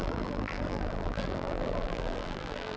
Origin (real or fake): fake